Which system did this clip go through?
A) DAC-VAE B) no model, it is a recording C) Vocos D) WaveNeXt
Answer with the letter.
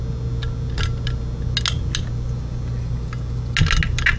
B